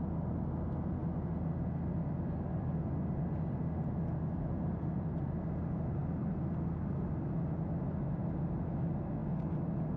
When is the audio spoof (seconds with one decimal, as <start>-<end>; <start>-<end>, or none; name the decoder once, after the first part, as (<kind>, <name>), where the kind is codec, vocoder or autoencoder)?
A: none